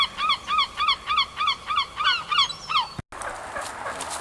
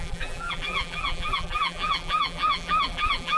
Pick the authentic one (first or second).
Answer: first